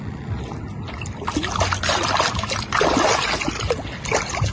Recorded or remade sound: recorded